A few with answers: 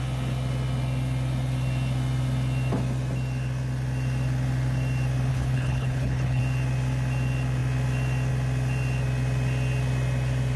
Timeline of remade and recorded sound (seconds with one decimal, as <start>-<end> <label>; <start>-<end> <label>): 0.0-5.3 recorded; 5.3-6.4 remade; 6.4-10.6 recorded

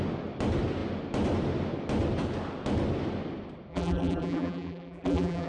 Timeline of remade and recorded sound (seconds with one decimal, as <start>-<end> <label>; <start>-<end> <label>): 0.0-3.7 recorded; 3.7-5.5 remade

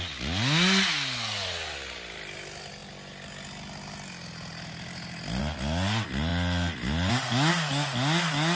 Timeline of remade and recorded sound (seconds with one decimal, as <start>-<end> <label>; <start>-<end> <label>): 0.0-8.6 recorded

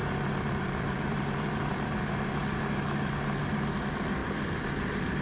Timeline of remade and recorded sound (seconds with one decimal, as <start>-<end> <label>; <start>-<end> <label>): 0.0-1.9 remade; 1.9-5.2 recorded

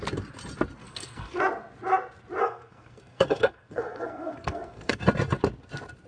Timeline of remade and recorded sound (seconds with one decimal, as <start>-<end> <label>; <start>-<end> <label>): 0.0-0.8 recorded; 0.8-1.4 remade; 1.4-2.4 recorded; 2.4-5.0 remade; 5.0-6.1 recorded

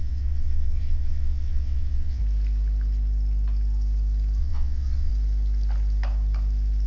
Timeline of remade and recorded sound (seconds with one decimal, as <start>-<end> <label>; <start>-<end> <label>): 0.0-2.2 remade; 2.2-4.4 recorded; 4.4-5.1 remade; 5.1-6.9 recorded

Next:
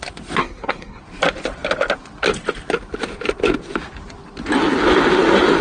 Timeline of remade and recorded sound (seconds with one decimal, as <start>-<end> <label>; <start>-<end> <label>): 0.0-0.4 recorded; 0.4-1.0 remade; 1.0-5.6 recorded

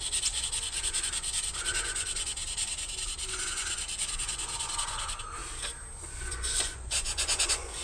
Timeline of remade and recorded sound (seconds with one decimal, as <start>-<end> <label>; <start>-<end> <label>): 0.0-5.4 remade; 5.4-6.0 recorded; 6.0-7.8 remade